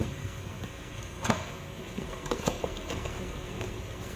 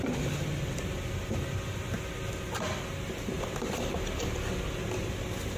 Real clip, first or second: second